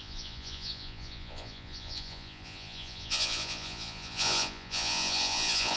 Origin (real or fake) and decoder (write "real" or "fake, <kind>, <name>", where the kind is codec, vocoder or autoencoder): fake, vocoder, Vocos